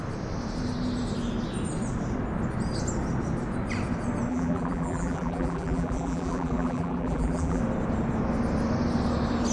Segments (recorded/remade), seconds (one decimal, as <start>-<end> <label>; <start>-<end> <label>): 0.0-4.3 recorded; 4.3-7.6 remade; 7.6-9.5 recorded

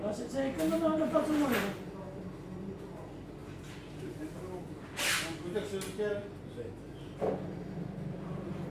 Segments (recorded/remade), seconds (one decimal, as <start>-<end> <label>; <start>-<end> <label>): 0.0-8.7 recorded

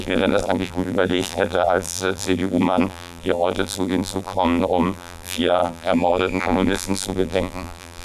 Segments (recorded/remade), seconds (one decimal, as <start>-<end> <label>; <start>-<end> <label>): 0.0-8.0 remade

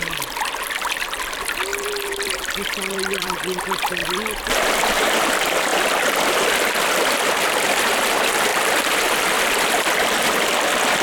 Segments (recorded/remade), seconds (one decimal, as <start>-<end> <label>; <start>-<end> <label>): 0.0-1.7 recorded; 1.7-3.6 remade; 3.6-8.5 recorded; 8.5-9.4 remade; 9.4-11.0 recorded